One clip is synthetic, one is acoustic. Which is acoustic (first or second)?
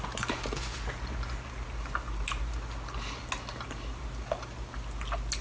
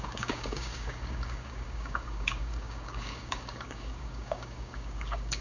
first